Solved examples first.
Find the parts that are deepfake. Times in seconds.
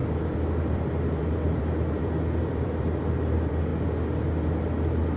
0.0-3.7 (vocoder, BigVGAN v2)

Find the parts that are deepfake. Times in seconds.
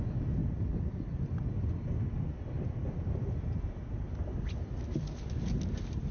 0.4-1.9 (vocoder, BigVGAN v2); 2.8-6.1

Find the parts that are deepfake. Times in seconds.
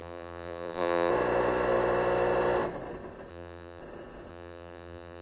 0.0-1.1 (vocoder, BigVGAN v2); 3.3-3.8; 4.3-5.2